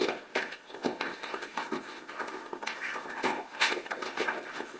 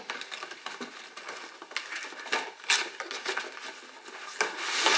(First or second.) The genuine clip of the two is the second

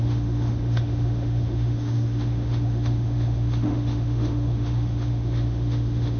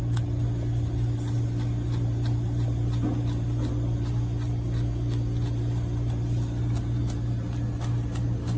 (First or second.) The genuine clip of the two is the second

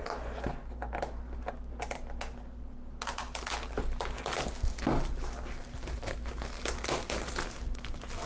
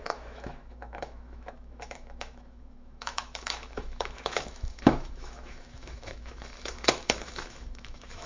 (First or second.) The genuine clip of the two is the first